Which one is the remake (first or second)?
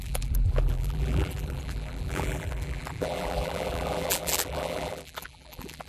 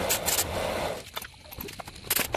first